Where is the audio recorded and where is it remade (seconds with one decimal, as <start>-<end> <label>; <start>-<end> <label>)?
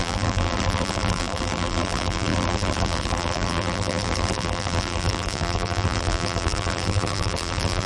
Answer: 0.0-7.9 remade